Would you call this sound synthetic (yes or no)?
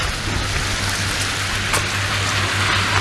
no